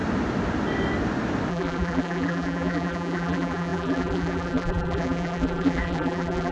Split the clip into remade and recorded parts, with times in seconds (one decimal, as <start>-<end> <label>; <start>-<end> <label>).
0.0-1.5 recorded; 1.5-6.5 remade